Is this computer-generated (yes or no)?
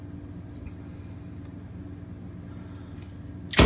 no